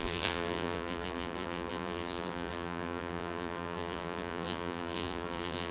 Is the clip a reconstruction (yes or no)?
yes